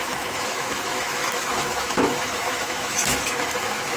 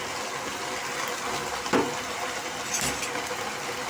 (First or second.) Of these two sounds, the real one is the second